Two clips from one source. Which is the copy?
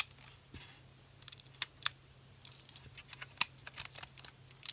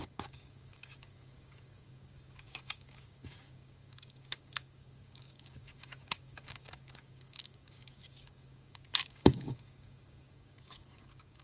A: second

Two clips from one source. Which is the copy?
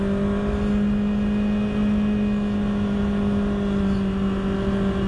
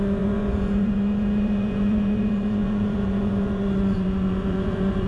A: second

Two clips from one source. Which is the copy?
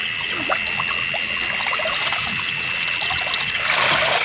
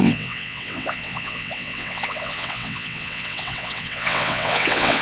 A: second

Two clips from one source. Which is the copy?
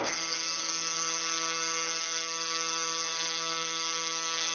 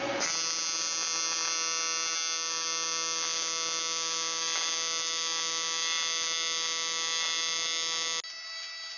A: first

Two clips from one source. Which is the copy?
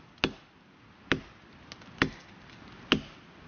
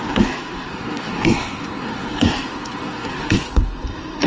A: second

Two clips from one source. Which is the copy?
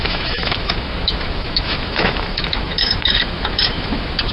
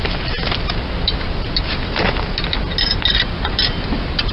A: first